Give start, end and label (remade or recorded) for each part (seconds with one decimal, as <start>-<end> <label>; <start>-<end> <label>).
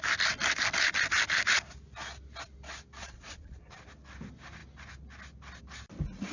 0.0-3.0 recorded; 3.0-3.8 remade; 3.8-6.3 recorded